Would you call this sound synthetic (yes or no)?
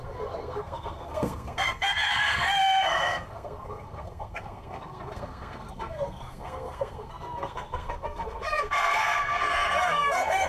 yes